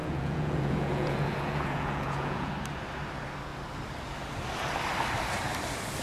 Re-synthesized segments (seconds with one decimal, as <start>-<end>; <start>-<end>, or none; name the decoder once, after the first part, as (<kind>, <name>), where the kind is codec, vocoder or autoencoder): 0.0-2.5 (vocoder, Vocos)